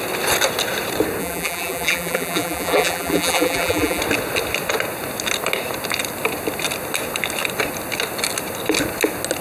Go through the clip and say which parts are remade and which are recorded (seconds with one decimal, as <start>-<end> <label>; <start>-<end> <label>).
0.0-1.2 recorded; 1.2-4.0 remade; 4.0-9.4 recorded